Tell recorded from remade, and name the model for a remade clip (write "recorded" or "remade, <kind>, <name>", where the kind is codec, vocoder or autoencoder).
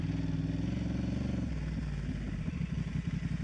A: recorded